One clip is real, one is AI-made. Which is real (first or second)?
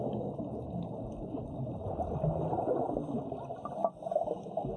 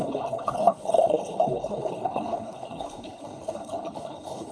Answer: first